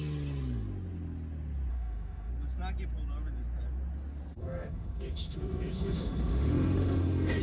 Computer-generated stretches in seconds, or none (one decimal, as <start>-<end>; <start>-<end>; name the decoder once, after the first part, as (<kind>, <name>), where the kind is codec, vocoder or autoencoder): 1.7-2.3 (autoencoder, DAC-VAE); 4.4-7.4